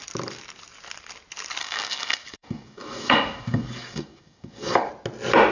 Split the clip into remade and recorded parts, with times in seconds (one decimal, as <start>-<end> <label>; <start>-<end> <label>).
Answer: 0.0-1.6 recorded; 1.6-4.9 remade; 4.9-5.5 recorded